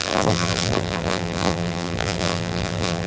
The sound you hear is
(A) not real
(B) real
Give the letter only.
A